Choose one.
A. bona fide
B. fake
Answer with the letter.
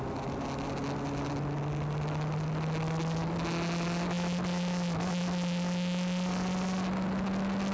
A